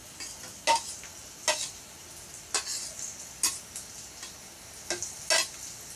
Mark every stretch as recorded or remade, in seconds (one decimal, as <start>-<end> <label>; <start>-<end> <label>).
0.0-6.0 recorded